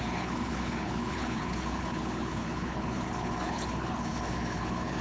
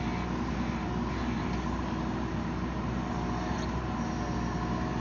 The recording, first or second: second